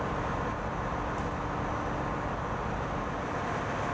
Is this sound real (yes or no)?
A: yes